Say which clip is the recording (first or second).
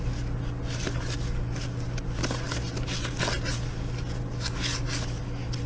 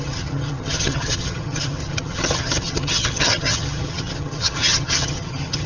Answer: first